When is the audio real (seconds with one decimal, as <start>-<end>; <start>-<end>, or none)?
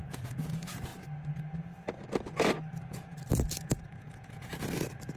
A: 0.9-2.7; 3.1-3.6; 4.5-5.2